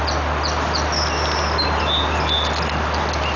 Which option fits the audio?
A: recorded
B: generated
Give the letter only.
A